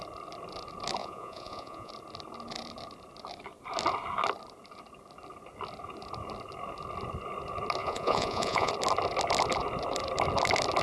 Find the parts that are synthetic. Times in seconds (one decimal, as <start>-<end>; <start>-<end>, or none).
1.0-1.9; 7.8-8.7

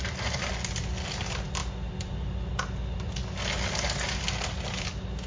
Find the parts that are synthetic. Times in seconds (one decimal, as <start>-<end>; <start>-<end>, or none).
none